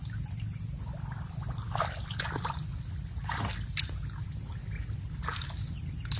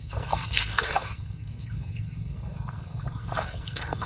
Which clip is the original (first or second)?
first